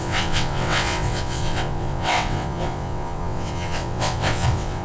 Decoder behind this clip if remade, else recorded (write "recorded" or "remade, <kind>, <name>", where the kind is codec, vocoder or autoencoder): remade, vocoder, WaveNeXt